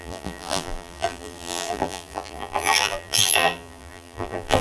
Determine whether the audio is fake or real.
fake